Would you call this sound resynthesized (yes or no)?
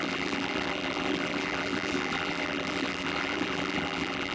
yes